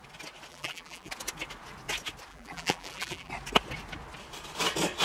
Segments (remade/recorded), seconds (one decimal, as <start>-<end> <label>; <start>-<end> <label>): 0.0-0.5 recorded; 0.5-1.1 remade; 1.1-2.3 recorded; 2.3-3.3 remade; 3.3-5.0 recorded